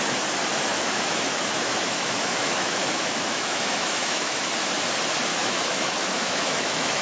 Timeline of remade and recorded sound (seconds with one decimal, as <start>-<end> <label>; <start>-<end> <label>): 0.0-0.7 recorded; 0.7-4.5 remade; 4.5-5.3 recorded; 5.3-7.0 remade